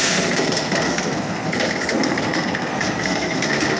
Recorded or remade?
remade